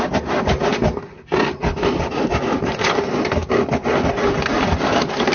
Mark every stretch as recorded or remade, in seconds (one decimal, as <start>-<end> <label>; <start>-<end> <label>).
0.0-5.3 recorded